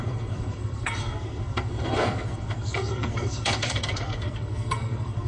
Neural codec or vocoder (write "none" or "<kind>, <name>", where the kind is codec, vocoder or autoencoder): codec, SNAC